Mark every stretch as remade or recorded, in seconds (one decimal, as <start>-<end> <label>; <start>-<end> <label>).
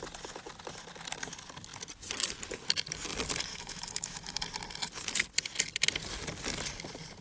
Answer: 0.0-3.5 recorded; 3.5-4.4 remade; 4.4-7.2 recorded